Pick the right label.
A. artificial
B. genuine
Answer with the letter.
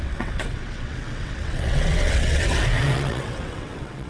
A